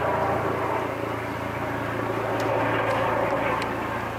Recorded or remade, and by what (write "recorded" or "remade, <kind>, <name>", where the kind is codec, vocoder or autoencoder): recorded